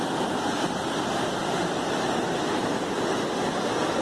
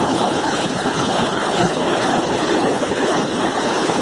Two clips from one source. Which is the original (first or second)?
first